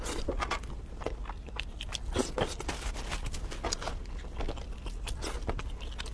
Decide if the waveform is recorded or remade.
recorded